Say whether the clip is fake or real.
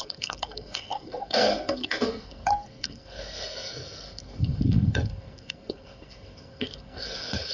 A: fake